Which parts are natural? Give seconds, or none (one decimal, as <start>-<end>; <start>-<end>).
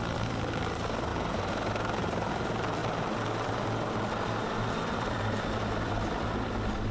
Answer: 1.1-2.0; 2.8-4.0